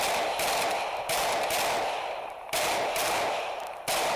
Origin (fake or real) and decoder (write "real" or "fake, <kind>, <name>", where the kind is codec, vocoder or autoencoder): real